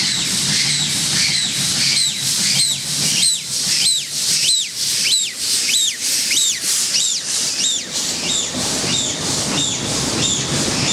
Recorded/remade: remade